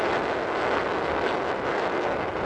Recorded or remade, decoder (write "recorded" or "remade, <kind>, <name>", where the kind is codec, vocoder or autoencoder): recorded